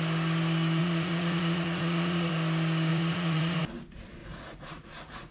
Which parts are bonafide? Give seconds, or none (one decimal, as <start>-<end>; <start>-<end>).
0.0-0.8; 2.3-2.9; 3.6-4.2